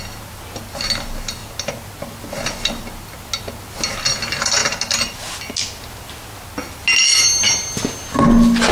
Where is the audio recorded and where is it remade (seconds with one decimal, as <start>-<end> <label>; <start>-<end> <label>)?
0.0-8.7 recorded